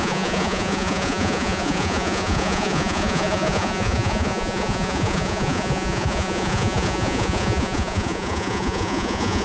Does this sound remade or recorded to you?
remade